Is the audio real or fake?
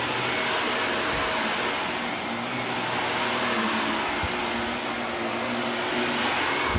real